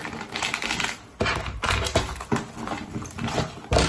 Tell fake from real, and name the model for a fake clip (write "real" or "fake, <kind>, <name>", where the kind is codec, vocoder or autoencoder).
real